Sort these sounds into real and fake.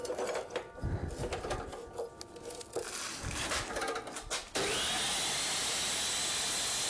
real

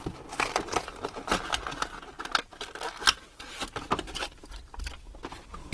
real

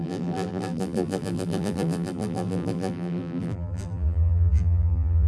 fake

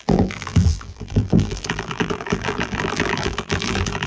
fake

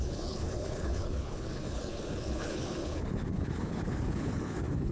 fake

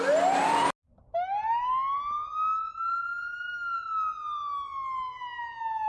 real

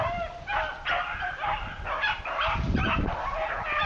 real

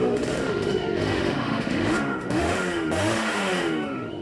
fake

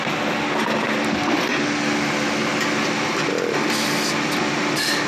real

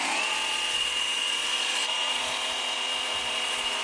fake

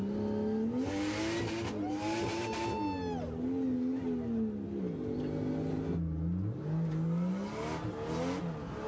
real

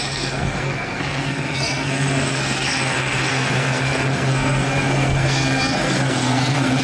fake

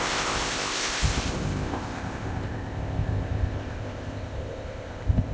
fake